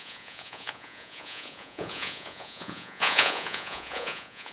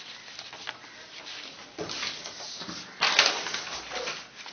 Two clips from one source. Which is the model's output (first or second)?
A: first